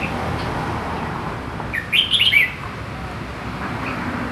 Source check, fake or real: real